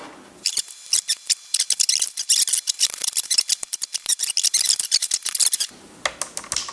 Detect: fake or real real